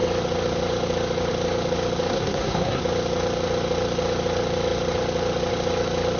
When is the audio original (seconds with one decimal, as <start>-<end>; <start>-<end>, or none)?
0.0-2.1; 2.8-6.2